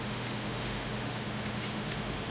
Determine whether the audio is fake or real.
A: fake